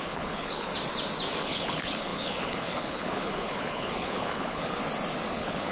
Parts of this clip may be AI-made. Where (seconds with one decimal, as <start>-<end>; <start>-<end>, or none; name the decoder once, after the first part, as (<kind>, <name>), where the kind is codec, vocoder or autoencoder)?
0.0-0.7 (codec, HILCodec); 1.4-4.8; 5.3-5.7